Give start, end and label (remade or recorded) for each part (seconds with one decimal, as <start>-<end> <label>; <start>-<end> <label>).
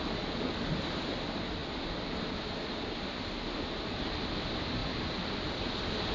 0.0-6.1 recorded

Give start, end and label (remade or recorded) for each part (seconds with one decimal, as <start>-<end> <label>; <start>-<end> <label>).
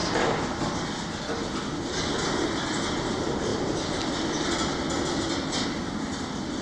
0.0-0.6 remade; 0.6-3.5 recorded; 3.5-4.0 remade; 4.0-6.6 recorded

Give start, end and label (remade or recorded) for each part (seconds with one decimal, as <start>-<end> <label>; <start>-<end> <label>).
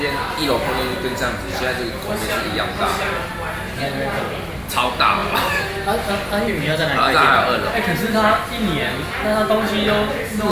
0.0-10.5 recorded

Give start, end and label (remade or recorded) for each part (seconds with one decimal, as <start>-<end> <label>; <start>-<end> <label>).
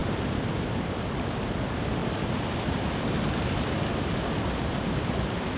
0.0-1.3 remade; 1.3-2.0 recorded; 2.0-5.6 remade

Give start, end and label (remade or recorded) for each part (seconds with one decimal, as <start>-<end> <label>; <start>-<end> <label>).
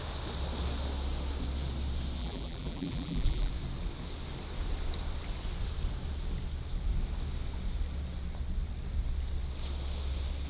0.0-2.2 recorded; 2.2-3.5 remade; 3.5-10.5 recorded